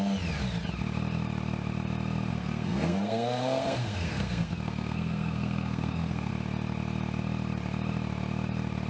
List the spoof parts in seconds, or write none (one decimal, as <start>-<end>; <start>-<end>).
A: 2.3-6.3